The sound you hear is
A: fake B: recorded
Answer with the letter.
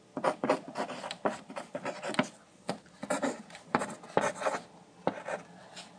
B